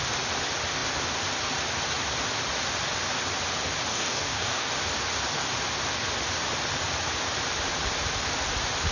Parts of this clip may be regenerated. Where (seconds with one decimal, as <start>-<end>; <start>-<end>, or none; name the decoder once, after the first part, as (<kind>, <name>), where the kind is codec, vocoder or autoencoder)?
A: 3.9-4.7 (codec, DAC)